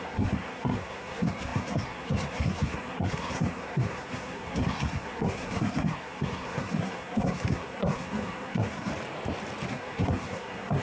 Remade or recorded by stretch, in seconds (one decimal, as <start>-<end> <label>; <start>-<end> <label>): 0.0-8.9 remade; 8.9-9.7 recorded; 9.7-10.8 remade